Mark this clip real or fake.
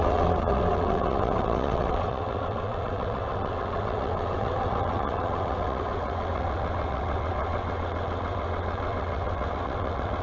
fake